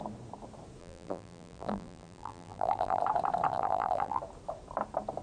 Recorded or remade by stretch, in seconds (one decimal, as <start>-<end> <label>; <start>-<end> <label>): 0.0-0.8 recorded; 0.8-3.0 remade; 3.0-3.5 recorded; 3.5-4.2 remade; 4.2-5.2 recorded